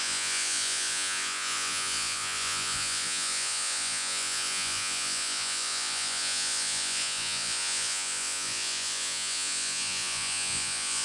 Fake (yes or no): yes